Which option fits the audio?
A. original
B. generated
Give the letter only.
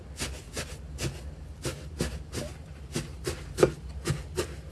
A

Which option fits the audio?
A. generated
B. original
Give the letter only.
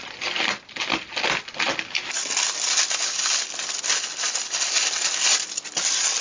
B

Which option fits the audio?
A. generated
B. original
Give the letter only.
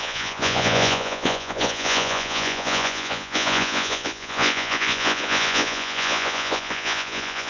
A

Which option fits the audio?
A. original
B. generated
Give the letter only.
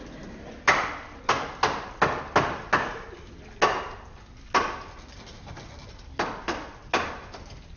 A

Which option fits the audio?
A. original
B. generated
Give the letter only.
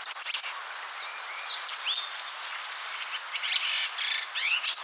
A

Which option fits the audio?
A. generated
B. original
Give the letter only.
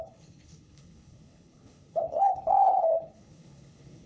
A